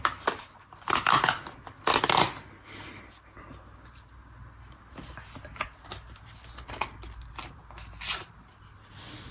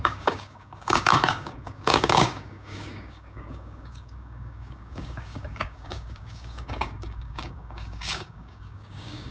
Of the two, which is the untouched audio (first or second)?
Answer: first